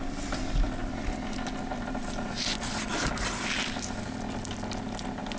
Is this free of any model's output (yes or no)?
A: yes